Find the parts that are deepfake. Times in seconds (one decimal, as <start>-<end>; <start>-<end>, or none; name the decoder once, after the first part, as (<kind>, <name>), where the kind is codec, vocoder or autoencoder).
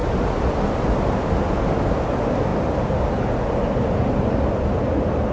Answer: none